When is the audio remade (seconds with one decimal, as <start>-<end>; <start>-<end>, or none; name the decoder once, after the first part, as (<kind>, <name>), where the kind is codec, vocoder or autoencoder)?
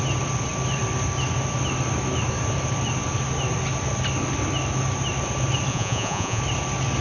5.7-6.4 (vocoder, Vocos)